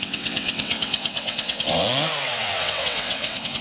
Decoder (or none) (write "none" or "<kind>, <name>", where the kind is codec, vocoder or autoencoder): vocoder, WaveNeXt